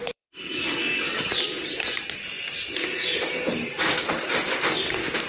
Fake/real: fake